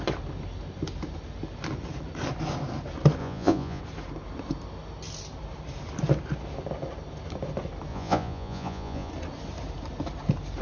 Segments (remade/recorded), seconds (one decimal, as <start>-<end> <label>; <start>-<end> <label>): 0.0-3.2 recorded; 3.2-3.8 remade; 3.8-7.9 recorded; 7.9-9.1 remade; 9.1-10.6 recorded